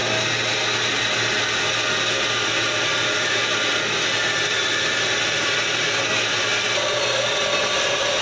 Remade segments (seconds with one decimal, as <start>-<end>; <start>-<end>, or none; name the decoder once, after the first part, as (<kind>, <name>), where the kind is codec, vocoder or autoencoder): none